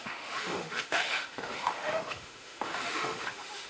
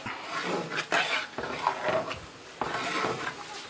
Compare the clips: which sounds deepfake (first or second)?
first